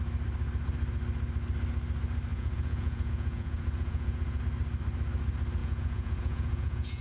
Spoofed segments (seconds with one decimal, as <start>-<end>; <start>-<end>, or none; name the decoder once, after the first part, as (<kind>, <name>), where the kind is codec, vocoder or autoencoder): 2.3-4.4 (vocoder, Vocos); 5.6-7.0